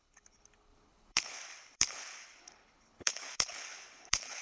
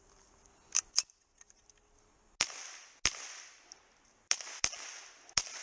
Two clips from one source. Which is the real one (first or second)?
second